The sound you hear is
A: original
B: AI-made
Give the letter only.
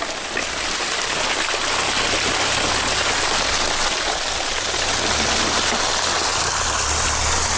A